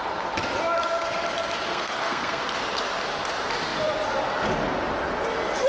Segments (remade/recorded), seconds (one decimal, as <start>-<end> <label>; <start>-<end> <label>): 0.0-1.7 recorded; 1.7-2.4 remade; 2.4-5.7 recorded